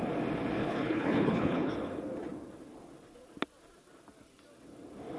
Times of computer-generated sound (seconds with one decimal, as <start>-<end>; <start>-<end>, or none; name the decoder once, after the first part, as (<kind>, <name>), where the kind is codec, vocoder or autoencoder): 0.6-1.7 (codec, HILCodec)